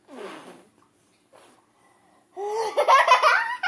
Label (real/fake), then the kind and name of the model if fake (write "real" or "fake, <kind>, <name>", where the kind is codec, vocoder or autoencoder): real